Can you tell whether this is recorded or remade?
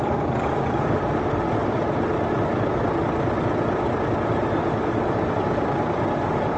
remade